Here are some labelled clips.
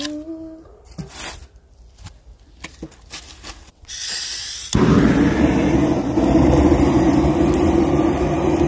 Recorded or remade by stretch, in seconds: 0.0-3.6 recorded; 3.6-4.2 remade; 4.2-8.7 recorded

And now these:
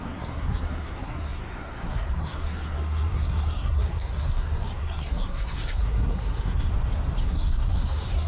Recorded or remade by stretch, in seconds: 0.0-6.7 remade; 6.7-7.2 recorded; 7.2-8.3 remade

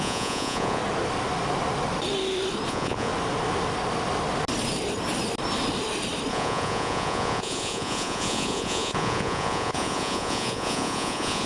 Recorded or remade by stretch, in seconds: 0.0-0.8 remade; 0.8-2.7 recorded; 2.7-3.1 remade; 3.1-6.3 recorded; 6.3-11.5 remade

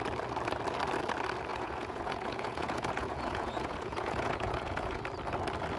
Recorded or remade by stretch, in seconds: 0.0-1.5 recorded; 1.5-5.0 remade; 5.0-5.8 recorded

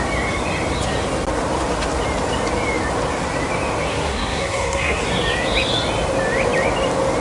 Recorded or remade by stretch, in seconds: 0.0-3.9 recorded; 3.9-5.0 remade; 5.0-7.2 recorded